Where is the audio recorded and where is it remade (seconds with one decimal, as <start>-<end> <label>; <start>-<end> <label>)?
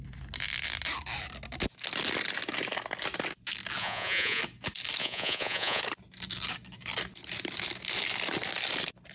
0.0-3.8 recorded; 3.8-4.4 remade; 4.4-5.0 recorded; 5.0-5.8 remade; 5.8-9.1 recorded